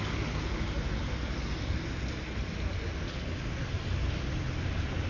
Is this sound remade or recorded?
recorded